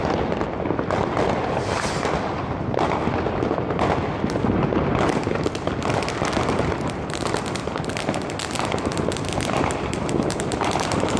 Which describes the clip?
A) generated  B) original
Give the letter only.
B